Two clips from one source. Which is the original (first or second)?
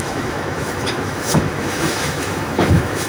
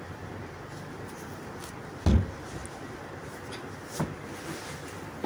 second